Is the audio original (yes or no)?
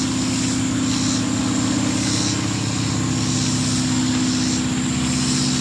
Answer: yes